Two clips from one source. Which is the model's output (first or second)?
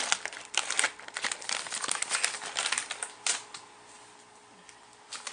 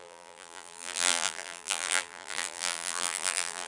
second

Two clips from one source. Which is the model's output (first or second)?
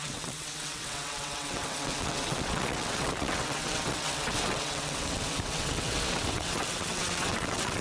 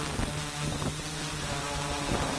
first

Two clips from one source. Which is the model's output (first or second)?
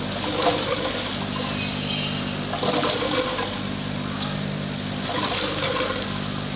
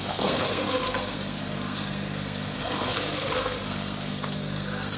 second